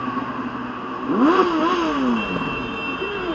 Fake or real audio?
real